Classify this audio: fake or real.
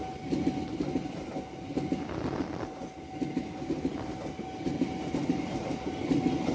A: real